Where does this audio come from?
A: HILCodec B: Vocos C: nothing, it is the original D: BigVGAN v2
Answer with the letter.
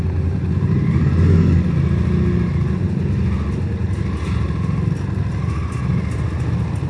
C